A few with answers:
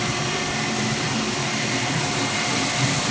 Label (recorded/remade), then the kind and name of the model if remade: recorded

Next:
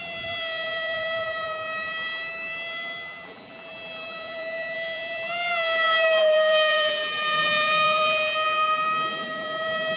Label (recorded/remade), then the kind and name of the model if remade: remade, vocoder, BigVGAN v2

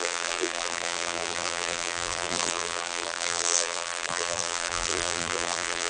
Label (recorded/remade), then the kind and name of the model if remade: remade, vocoder, BigVGAN v2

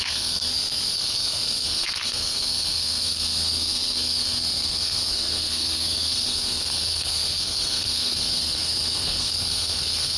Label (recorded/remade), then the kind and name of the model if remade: remade, codec, SNAC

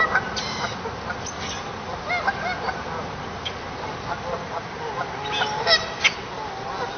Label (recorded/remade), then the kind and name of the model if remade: recorded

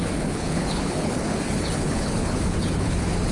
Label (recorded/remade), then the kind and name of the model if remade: remade, codec, HILCodec